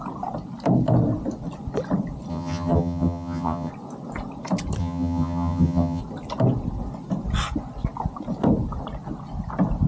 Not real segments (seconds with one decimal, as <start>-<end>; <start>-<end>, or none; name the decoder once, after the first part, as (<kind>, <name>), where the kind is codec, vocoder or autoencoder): 2.3-3.7 (vocoder, HiFi-GAN); 4.8-6.0